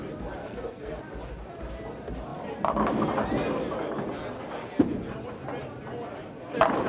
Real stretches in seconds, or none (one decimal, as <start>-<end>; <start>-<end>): 0.0-0.4; 1.0-6.9